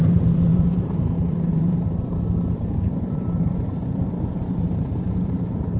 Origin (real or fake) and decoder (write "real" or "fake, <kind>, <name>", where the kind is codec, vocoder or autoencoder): fake, vocoder, BigVGAN v2